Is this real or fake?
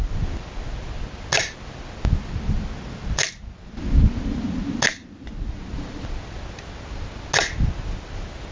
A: real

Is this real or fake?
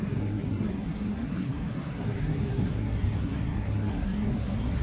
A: fake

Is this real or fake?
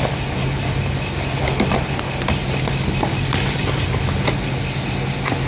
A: real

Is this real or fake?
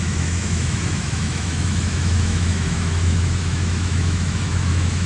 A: fake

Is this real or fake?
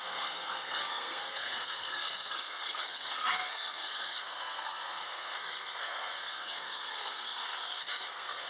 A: fake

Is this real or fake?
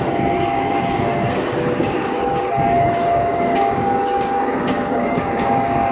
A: fake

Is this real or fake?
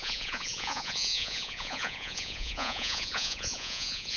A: fake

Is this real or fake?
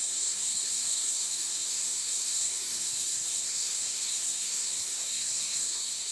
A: fake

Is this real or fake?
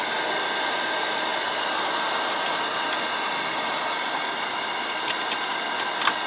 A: real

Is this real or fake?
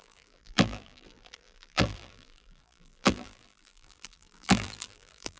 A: fake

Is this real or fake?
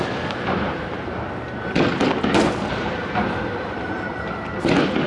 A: real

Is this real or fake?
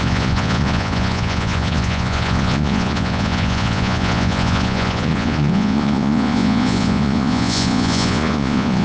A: fake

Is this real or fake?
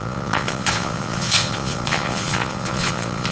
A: fake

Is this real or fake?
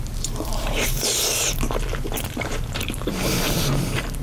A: fake